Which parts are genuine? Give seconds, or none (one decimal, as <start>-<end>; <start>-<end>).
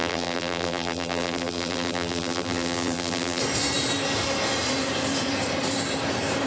3.4-6.5